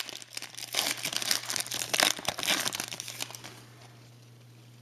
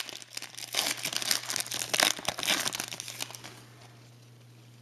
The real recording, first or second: second